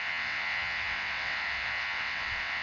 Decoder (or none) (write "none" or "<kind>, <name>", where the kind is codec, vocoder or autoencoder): vocoder, WaveNeXt